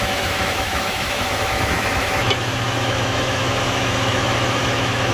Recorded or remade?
remade